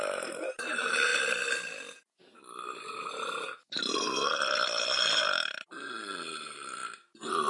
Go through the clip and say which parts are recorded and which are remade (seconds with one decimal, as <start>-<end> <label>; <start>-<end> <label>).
0.0-1.1 remade; 1.1-5.0 recorded; 5.0-6.8 remade; 6.8-7.5 recorded